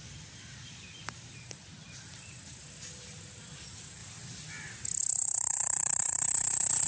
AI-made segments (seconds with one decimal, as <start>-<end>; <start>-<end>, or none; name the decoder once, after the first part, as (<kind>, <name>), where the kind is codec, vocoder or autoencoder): 0.0-4.0 (vocoder, BigVGAN v2); 5.1-6.9